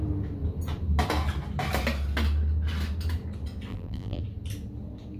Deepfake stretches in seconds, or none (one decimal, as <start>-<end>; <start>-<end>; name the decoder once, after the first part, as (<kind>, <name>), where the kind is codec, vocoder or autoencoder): 3.7-4.2 (vocoder, BigVGAN v2)